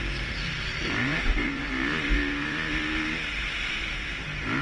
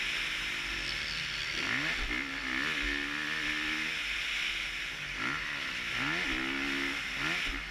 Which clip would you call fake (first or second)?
first